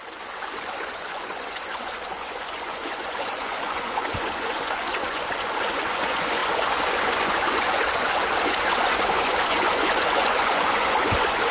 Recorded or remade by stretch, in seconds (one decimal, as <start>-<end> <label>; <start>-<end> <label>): 0.0-11.5 remade

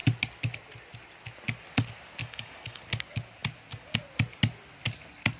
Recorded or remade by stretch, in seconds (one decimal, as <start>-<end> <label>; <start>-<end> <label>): 0.0-2.2 recorded; 2.2-2.8 remade; 2.8-5.4 recorded

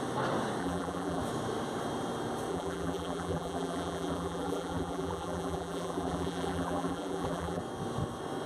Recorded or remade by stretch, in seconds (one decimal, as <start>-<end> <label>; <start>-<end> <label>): 0.0-0.6 recorded; 0.6-1.2 remade; 1.2-2.5 recorded; 2.5-7.6 remade; 7.6-8.5 recorded

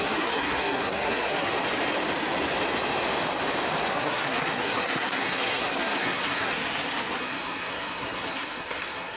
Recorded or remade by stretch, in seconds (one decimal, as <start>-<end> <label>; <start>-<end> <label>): 0.0-1.5 remade; 1.5-3.9 recorded; 3.9-6.5 remade; 6.5-7.2 recorded; 7.2-9.2 remade

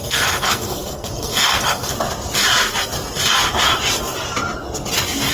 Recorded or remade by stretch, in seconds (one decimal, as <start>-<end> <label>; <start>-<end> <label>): 0.0-1.9 remade; 1.9-5.3 recorded

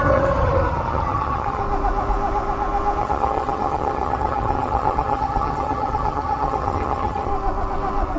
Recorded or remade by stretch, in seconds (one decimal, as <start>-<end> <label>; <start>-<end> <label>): 0.0-1.6 remade; 1.6-3.0 recorded; 3.0-7.3 remade; 7.3-8.2 recorded

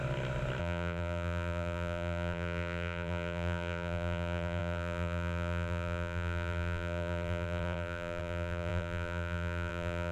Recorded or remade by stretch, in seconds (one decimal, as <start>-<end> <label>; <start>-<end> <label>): 0.0-0.6 recorded; 0.6-10.1 remade

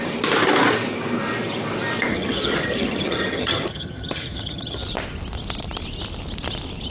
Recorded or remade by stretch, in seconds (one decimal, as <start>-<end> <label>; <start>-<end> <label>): 0.0-2.1 recorded; 2.1-4.8 remade; 4.8-6.9 recorded